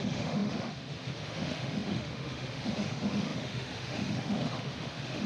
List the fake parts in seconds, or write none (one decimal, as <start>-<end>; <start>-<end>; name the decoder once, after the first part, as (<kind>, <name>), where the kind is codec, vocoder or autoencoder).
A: 0.0-5.3 (autoencoder, DAC-VAE)